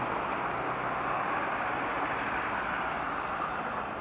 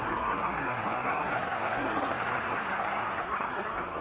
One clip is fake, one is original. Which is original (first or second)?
first